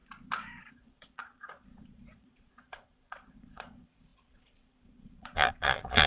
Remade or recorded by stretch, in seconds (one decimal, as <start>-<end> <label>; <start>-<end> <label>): 0.0-0.6 recorded; 0.6-6.1 remade